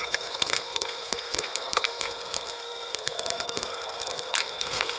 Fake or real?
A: fake